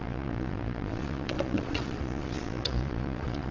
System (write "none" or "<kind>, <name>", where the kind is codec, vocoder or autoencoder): vocoder, Vocos